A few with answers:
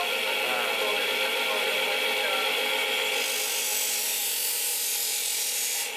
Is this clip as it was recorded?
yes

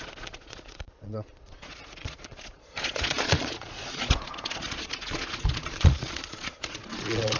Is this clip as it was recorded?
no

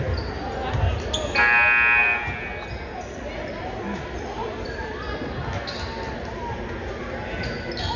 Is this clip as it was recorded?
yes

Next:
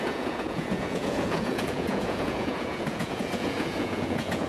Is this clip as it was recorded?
no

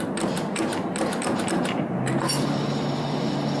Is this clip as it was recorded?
yes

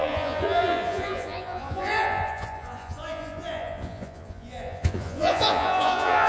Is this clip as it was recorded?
no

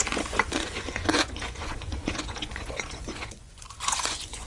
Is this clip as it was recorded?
no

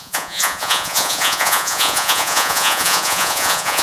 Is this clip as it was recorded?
no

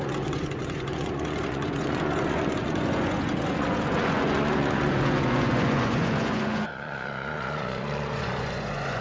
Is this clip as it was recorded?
no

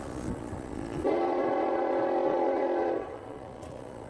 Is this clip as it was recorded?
no